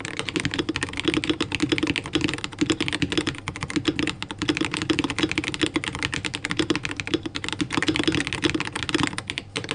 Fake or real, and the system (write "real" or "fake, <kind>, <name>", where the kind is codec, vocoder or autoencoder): real